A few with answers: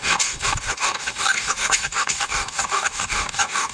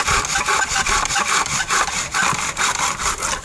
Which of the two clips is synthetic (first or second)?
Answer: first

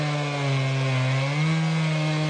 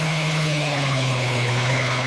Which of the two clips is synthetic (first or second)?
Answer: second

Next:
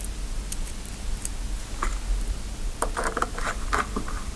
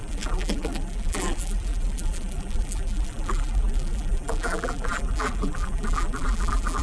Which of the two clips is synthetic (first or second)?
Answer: second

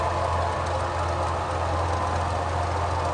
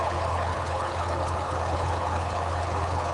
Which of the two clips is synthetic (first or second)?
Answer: second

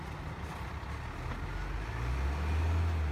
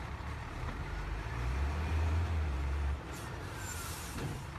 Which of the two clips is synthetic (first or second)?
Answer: second